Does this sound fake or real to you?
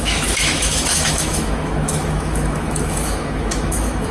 fake